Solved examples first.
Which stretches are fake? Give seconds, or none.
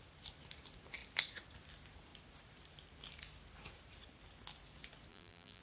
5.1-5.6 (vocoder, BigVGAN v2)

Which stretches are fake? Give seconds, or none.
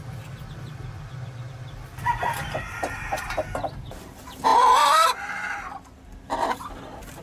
0.0-7.2 (vocoder, BigVGAN v2)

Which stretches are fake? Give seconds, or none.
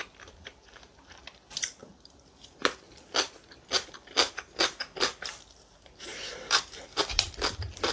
0.0-1.8 (vocoder, BigVGAN v2); 5.3-7.9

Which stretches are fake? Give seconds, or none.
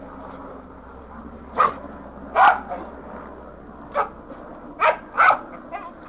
0.4-2.1 (vocoder, BigVGAN v2); 4.5-5.0